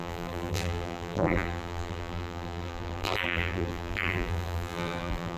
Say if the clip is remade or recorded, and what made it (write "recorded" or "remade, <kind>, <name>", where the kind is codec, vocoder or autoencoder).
remade, vocoder, BigVGAN v2